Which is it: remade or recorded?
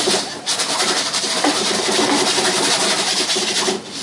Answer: remade